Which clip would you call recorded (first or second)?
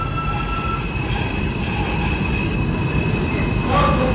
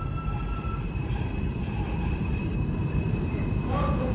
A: first